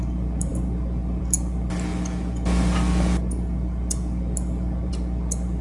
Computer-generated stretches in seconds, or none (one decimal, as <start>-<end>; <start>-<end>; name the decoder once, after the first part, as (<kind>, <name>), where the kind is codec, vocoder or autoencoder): none